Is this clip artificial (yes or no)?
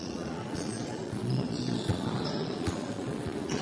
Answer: yes